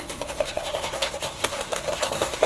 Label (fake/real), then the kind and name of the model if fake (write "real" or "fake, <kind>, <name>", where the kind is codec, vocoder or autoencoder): fake, codec, SNAC